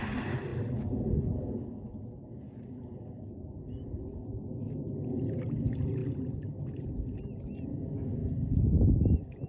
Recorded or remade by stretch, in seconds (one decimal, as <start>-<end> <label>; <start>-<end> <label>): 0.0-9.5 recorded

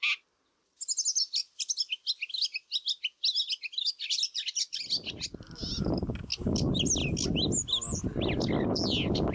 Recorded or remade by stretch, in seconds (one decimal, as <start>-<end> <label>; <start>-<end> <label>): 0.0-9.3 recorded

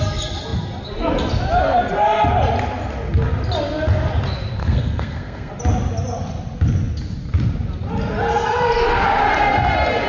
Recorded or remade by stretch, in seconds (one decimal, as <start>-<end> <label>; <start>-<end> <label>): 0.0-4.6 recorded; 4.6-5.5 remade; 5.5-10.1 recorded

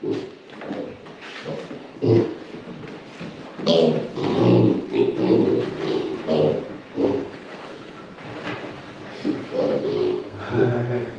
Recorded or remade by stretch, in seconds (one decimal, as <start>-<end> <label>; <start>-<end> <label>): 0.0-1.8 recorded; 1.8-2.4 remade; 2.4-7.0 recorded; 7.0-7.9 remade; 7.9-9.6 recorded; 9.6-11.2 remade

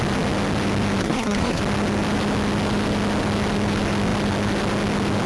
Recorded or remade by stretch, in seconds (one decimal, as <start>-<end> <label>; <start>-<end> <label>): 0.0-1.0 recorded; 1.0-1.6 remade; 1.6-5.3 recorded

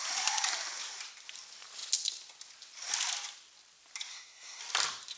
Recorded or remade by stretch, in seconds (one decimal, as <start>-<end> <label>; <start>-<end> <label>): 0.0-4.1 recorded; 4.1-4.6 remade; 4.6-5.2 recorded

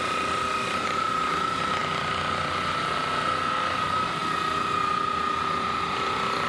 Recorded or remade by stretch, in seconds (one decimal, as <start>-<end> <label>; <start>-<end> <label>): 0.0-6.5 recorded

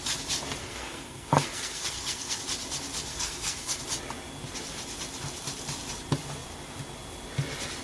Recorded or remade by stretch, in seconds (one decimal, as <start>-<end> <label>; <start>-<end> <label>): 0.0-0.6 recorded; 0.6-2.4 remade; 2.4-3.1 recorded; 3.1-3.8 remade; 3.8-7.8 recorded